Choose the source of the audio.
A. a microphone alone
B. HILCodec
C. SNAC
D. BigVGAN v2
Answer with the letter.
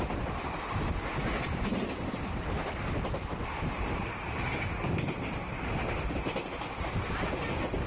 A